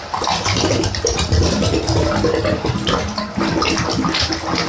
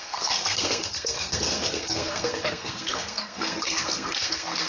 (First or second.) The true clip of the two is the first